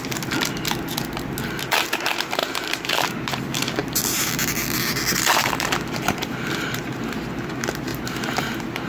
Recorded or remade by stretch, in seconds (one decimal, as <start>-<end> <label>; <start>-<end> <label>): 0.0-2.4 recorded; 2.4-3.1 remade; 3.1-3.8 recorded; 3.8-7.5 remade; 7.5-7.9 recorded; 7.9-8.9 remade